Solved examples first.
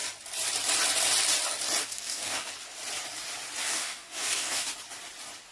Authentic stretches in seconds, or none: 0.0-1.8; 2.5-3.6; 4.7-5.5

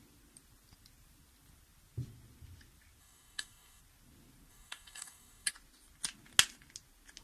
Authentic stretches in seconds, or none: 0.0-3.0; 3.8-4.5; 5.5-7.2

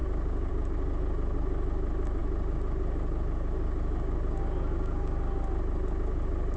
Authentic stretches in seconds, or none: 0.0-6.6

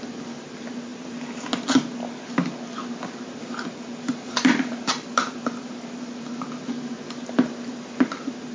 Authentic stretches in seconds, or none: 0.0-8.5

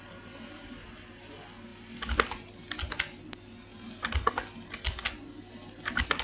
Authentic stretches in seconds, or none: 0.0-6.2

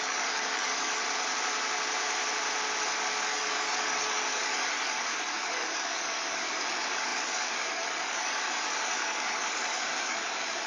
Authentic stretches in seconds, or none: 1.0-3.1